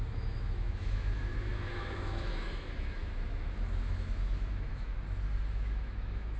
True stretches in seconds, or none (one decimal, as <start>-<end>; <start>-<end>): 4.9-5.5